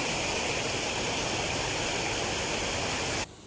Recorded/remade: recorded